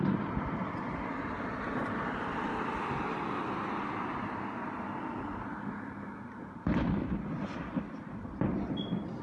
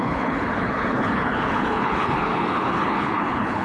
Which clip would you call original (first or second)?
first